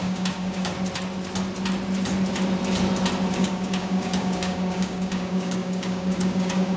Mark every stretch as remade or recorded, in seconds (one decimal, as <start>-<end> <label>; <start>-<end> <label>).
0.0-0.7 remade; 0.7-3.3 recorded; 3.3-6.8 remade